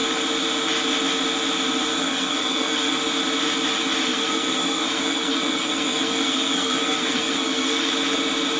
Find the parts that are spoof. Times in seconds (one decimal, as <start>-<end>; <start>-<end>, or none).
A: 1.9-3.0; 4.1-7.9